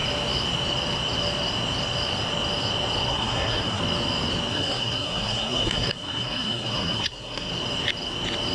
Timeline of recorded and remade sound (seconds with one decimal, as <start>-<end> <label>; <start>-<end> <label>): 0.0-3.1 recorded; 3.1-3.8 remade; 3.8-4.5 recorded; 4.5-7.5 remade; 7.5-8.5 recorded

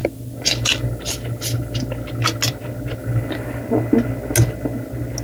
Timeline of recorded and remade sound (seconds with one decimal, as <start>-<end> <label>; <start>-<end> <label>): 0.0-1.8 remade; 1.8-3.0 recorded; 3.0-3.6 remade; 3.6-5.2 recorded

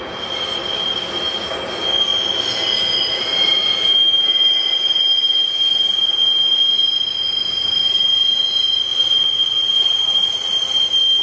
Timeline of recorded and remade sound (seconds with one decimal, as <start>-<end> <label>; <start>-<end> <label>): 0.0-8.9 recorded; 8.9-10.3 remade; 10.3-11.2 recorded